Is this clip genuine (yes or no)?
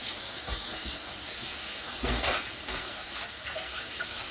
no